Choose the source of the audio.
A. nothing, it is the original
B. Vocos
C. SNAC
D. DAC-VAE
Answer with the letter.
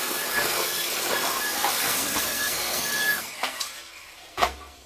C